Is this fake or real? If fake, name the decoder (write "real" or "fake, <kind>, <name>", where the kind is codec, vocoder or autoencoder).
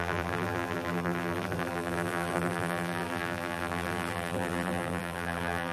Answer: fake, vocoder, BigVGAN v2